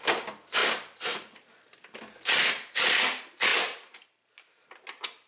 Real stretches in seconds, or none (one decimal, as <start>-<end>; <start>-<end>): 0.0-0.6; 2.0-3.5; 4.6-5.3